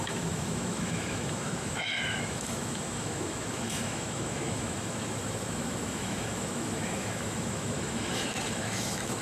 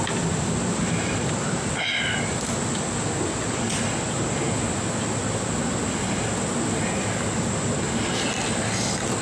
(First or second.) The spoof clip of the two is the first